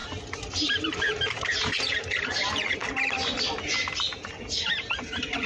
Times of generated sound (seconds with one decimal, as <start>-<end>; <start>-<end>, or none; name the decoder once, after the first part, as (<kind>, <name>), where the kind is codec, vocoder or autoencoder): none